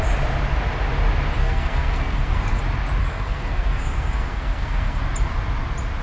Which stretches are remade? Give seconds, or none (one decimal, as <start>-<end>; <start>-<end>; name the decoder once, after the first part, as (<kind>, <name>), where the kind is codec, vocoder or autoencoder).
1.4-2.6 (codec, SNAC); 3.0-5.0